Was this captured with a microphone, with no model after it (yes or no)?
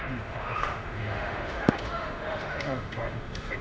no